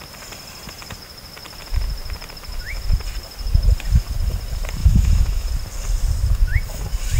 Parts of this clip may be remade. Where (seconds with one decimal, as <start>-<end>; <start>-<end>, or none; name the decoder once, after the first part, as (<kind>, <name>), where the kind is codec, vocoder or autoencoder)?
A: 4.8-5.5 (autoencoder, DAC-VAE)